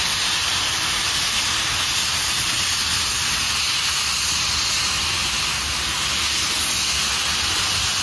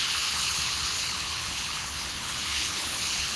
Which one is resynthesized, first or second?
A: second